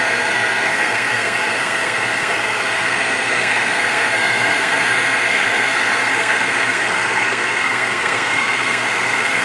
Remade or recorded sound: remade